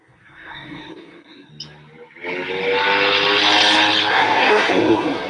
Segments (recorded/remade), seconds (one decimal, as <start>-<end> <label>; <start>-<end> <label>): 0.0-1.5 remade; 1.5-4.1 recorded; 4.1-5.3 remade